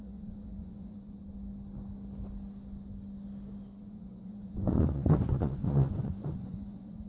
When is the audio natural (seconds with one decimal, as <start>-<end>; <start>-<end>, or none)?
1.2-3.8